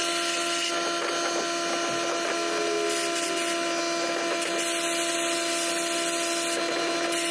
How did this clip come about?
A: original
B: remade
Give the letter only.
A